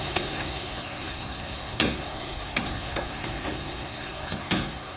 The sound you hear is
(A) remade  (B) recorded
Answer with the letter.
A